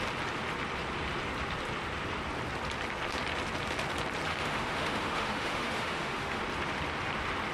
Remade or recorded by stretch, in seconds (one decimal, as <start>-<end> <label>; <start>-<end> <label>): 0.0-4.3 recorded; 4.3-6.4 remade; 6.4-7.5 recorded